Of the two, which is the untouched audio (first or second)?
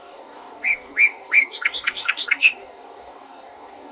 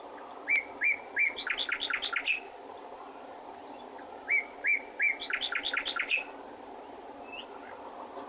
second